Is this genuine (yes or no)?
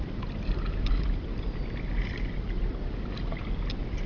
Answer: yes